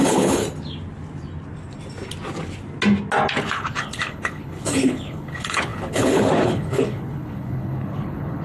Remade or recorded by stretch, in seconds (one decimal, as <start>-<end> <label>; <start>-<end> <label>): 0.0-0.4 remade; 0.4-3.4 recorded; 3.4-8.4 remade